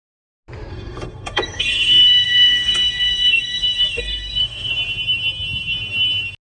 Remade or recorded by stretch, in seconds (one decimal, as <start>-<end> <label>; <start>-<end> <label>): 0.0-0.7 recorded; 0.7-4.7 remade; 4.7-6.6 recorded